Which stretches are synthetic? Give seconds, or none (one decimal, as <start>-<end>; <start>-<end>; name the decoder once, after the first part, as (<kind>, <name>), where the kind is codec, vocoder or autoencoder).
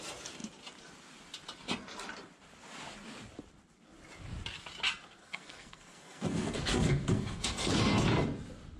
5.2-7.8 (codec, SNAC)